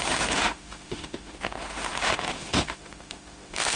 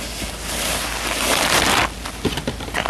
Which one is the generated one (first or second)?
first